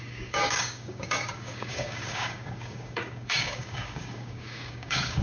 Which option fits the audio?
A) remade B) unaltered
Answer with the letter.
A